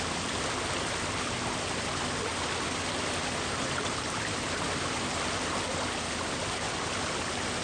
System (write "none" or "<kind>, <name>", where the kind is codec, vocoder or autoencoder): none